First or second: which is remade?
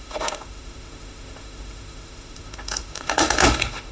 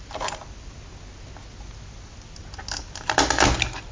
first